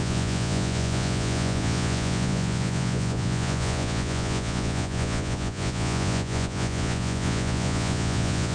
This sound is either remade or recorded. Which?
remade